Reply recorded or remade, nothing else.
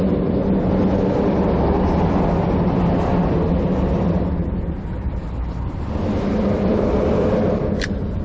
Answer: recorded